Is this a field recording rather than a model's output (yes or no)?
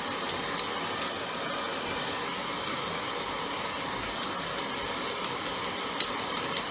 yes